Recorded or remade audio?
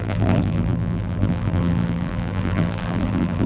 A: remade